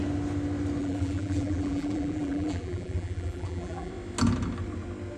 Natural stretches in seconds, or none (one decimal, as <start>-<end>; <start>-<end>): 0.0-0.8; 3.9-5.2